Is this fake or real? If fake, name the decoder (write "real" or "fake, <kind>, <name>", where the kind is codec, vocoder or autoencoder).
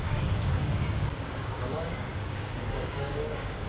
fake, codec, DAC